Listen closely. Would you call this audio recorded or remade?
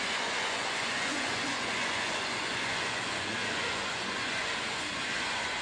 remade